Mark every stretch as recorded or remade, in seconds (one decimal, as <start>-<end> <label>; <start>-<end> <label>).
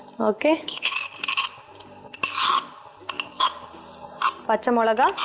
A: 0.0-0.4 recorded; 0.4-1.0 remade; 1.0-5.2 recorded